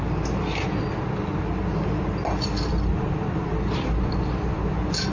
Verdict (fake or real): real